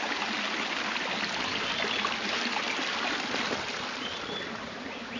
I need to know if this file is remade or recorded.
recorded